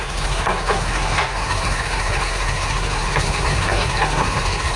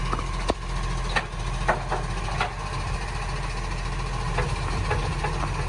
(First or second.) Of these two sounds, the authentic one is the second